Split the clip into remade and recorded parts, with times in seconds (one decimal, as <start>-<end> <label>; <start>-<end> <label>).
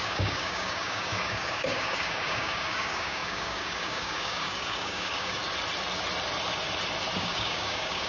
0.0-5.4 remade; 5.4-7.2 recorded; 7.2-8.1 remade